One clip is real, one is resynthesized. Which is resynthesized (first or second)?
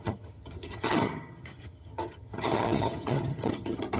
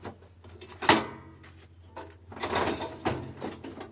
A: first